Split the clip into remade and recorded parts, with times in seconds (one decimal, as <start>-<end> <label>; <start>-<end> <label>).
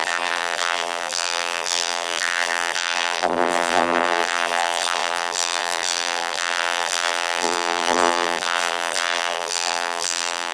0.0-10.5 remade